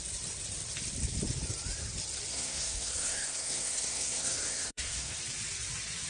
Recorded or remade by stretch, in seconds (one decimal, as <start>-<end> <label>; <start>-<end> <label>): 0.0-2.3 recorded; 2.3-5.2 remade; 5.2-6.1 recorded

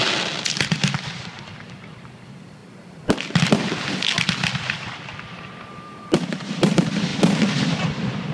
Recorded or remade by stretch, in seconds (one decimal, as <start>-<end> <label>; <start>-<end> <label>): 0.0-2.6 remade; 2.6-5.6 recorded; 5.6-7.1 remade; 7.1-7.8 recorded; 7.8-8.3 remade